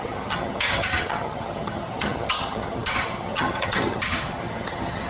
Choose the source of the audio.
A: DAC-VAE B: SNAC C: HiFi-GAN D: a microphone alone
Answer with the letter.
C